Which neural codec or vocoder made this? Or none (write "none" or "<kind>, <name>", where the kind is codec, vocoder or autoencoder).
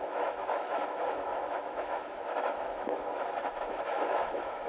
autoencoder, DAC-VAE